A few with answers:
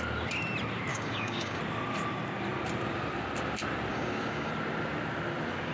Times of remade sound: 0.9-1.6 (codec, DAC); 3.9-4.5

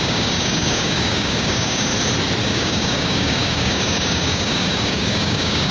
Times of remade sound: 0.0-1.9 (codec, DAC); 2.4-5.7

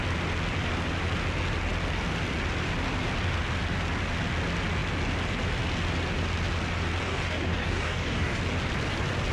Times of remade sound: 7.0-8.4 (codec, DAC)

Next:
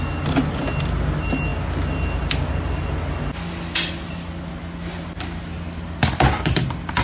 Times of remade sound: none

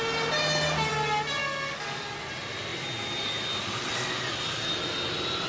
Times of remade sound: 1.4-2.0 (codec, DAC)

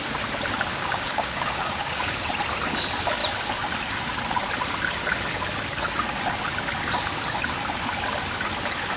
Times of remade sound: 0.7-2.3 (codec, DAC)